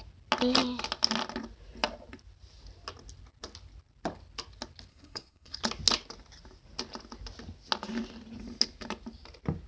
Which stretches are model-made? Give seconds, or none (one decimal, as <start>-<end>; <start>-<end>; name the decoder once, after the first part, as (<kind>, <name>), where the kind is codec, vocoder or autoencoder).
4.9-5.6 (codec, SNAC)